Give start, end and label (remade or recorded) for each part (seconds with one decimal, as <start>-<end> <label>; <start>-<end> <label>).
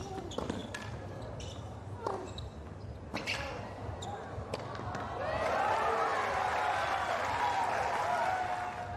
0.0-9.0 recorded